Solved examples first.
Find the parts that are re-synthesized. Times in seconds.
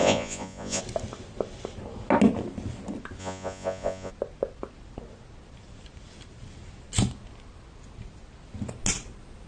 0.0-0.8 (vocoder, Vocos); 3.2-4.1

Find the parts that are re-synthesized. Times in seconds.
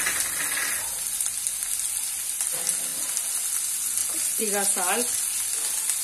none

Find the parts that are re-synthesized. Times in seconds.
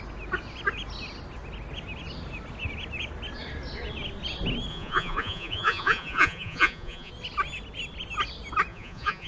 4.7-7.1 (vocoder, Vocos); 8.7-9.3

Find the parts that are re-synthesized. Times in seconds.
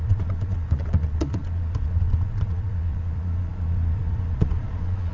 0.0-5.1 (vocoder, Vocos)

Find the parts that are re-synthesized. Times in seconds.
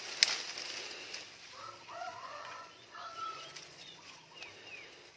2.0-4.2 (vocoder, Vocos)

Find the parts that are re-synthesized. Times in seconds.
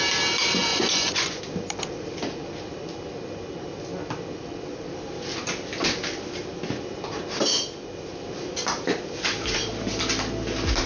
0.7-1.4 (vocoder, Vocos)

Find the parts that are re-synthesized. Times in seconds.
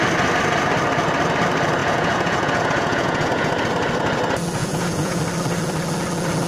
1.8-3.5 (vocoder, Vocos); 4.6-5.2